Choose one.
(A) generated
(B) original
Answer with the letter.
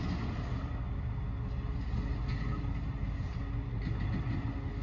B